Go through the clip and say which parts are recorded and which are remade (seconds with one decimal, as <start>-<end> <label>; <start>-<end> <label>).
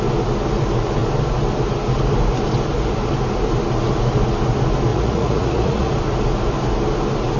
0.0-4.9 recorded; 4.9-5.9 remade; 5.9-7.4 recorded